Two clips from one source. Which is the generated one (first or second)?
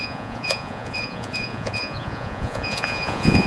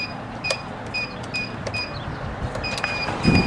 first